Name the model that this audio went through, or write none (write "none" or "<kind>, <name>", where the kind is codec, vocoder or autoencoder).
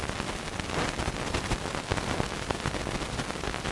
none